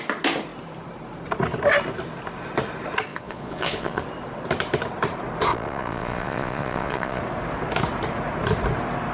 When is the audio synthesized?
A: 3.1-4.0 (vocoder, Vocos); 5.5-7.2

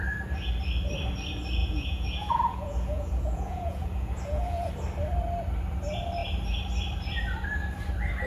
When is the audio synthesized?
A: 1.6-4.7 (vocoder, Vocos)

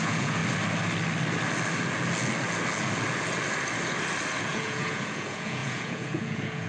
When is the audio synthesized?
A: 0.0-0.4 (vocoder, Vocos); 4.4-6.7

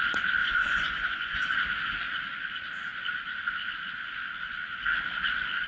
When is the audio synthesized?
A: 0.4-1.5 (vocoder, Vocos)

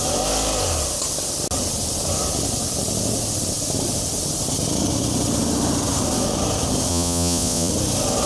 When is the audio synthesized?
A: 6.9-7.7 (vocoder, Vocos)

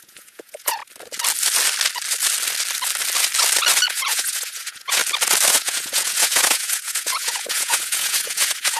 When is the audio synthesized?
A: 0.0-0.8 (vocoder, Vocos); 3.9-5.0; 5.5-8.8

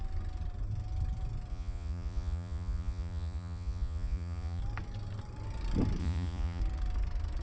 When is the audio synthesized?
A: 1.5-4.6 (vocoder, Vocos); 6.0-6.6

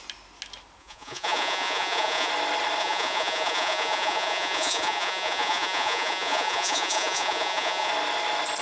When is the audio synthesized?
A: 0.8-2.3 (vocoder, Vocos); 2.8-7.9